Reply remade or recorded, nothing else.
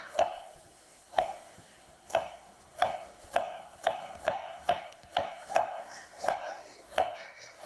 remade